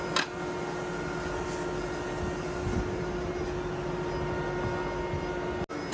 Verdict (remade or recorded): recorded